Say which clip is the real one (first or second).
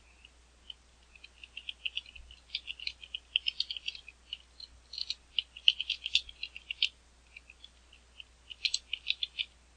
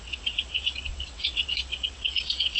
first